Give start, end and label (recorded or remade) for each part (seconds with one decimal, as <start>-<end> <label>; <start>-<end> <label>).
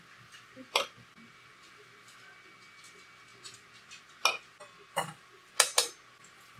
0.0-6.6 recorded